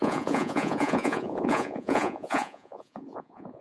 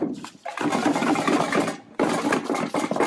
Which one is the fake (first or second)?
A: first